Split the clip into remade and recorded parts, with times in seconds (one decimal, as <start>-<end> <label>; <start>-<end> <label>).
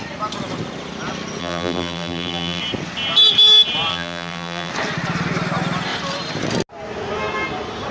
0.0-1.4 recorded; 1.4-2.6 remade; 2.6-3.9 recorded; 3.9-4.7 remade; 4.7-7.9 recorded